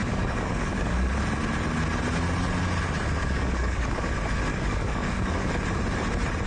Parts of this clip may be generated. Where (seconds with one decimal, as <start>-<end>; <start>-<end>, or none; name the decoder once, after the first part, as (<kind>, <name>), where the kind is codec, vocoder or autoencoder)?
0.0-1.1 (codec, DAC); 3.2-4.1; 4.5-5.5